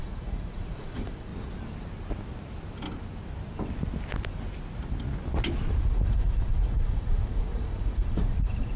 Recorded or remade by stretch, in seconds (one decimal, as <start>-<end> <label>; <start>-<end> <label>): 0.0-1.3 remade; 1.3-5.7 recorded; 5.7-8.8 remade